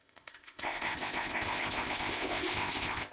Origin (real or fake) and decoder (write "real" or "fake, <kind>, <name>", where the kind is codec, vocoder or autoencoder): fake, codec, ZipCodec